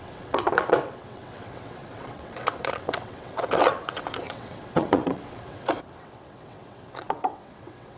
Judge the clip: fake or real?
fake